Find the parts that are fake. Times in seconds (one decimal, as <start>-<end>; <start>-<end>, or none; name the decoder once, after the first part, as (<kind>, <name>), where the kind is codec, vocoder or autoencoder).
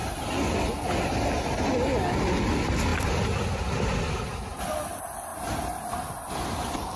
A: 2.9-3.5 (vocoder, BigVGAN v2)